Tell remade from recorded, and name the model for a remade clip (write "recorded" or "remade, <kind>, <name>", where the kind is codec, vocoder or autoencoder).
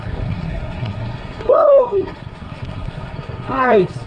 remade, codec, SNAC